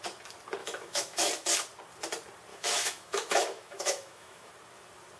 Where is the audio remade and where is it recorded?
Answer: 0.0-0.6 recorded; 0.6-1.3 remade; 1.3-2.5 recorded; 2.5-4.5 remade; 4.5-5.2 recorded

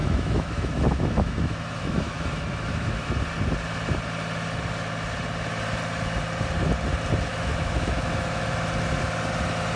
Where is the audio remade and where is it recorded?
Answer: 0.0-3.1 remade; 3.1-7.3 recorded; 7.3-8.4 remade; 8.4-9.8 recorded